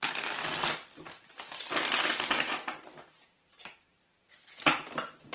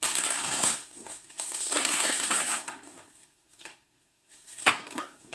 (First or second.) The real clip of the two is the first